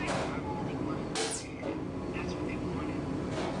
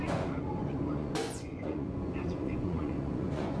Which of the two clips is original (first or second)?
first